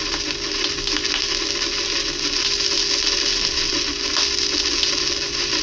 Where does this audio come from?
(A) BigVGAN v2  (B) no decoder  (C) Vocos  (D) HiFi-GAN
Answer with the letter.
B